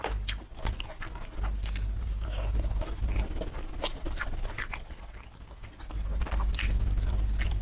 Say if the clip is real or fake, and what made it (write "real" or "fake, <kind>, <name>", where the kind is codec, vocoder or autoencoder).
real